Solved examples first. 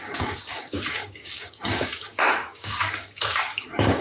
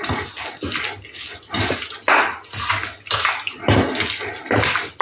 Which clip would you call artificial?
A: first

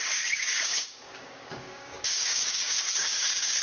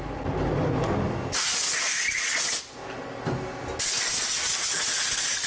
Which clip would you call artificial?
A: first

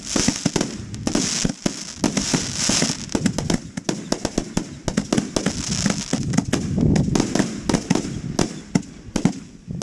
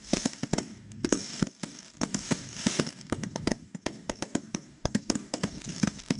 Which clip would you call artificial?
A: second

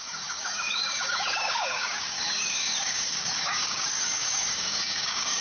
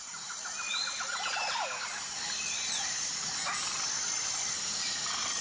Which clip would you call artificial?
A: first